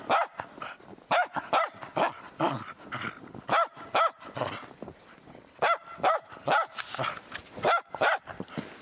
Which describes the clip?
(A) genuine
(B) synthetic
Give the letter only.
A